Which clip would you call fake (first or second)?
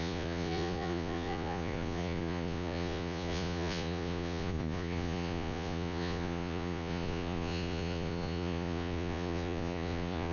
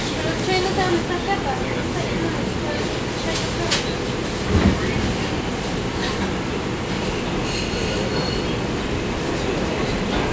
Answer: first